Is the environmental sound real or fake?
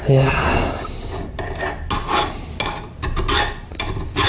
real